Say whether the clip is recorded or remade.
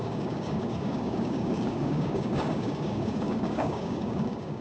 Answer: remade